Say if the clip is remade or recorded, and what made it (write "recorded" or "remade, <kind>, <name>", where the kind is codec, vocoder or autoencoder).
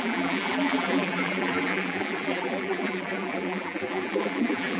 remade, vocoder, BigVGAN v2